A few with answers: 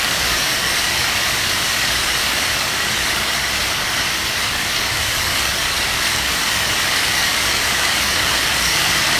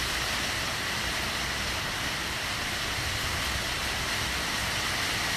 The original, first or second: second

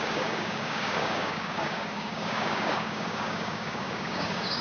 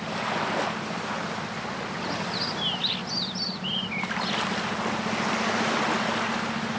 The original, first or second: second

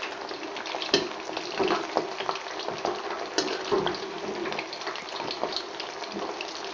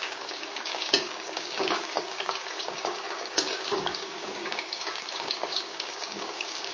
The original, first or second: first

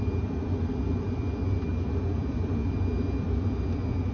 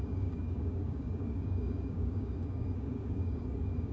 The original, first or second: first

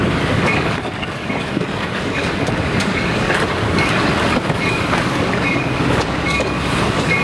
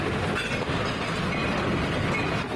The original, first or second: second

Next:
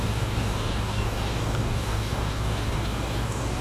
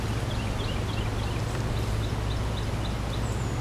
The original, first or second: second